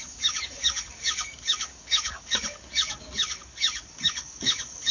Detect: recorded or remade remade